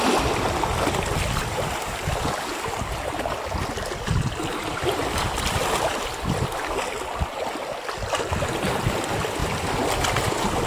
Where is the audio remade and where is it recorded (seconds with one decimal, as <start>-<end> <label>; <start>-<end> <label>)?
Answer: 0.0-10.7 recorded